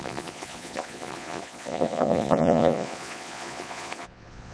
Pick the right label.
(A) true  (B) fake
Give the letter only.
B